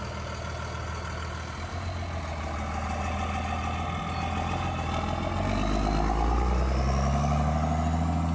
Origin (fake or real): real